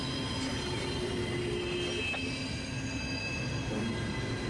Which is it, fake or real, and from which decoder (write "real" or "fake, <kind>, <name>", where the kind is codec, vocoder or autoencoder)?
real